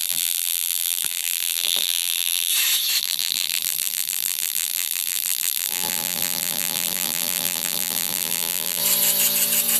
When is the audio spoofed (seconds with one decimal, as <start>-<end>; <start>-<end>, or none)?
0.0-2.5; 3.0-8.8

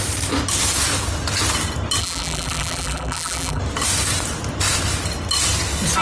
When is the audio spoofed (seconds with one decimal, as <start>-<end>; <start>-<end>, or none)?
2.0-3.6

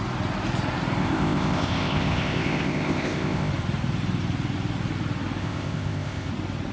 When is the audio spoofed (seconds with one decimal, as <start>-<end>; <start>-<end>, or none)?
1.0-3.5; 5.4-6.3

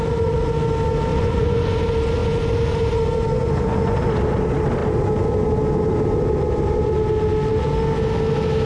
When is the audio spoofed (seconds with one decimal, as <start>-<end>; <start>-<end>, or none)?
1.1-1.8; 3.4-4.1

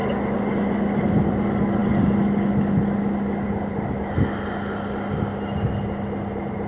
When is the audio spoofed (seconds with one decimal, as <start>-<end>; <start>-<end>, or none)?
none

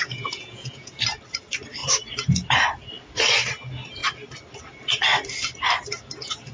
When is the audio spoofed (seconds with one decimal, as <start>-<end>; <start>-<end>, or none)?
0.0-0.9

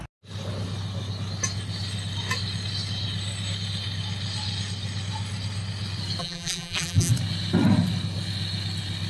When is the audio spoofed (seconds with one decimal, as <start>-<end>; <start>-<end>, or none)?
6.2-7.1

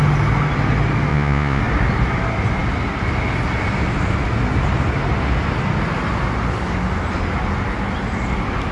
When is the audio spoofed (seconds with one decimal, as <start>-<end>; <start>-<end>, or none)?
1.1-1.6